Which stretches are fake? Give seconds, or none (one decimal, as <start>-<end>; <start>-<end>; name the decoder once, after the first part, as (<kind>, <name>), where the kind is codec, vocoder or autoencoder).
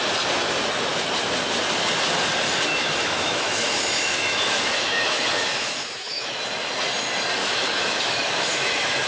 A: 2.7-6.4 (autoencoder, DAC-VAE); 7.4-9.1